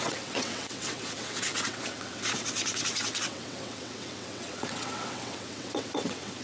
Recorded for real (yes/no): no